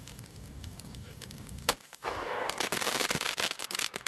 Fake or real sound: fake